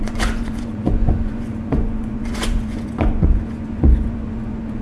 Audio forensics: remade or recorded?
remade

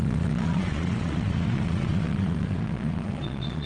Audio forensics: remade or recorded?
remade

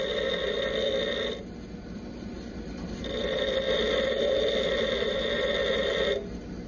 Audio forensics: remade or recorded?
recorded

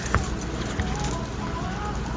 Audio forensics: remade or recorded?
recorded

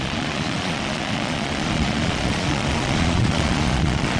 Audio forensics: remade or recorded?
remade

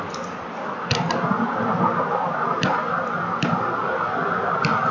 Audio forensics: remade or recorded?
recorded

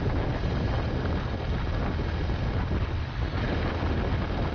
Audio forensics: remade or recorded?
recorded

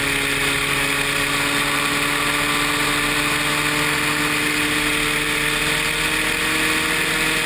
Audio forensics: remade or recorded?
recorded